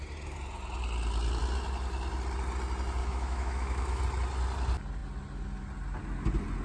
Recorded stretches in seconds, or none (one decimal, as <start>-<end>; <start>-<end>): 0.0-3.0; 4.0-6.6